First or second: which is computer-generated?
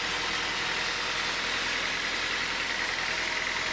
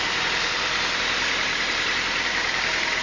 second